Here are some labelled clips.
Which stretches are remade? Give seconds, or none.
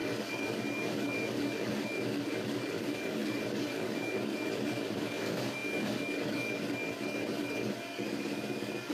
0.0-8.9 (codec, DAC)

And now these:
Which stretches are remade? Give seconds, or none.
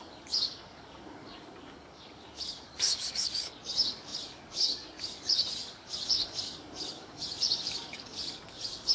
0.0-8.9 (codec, DAC)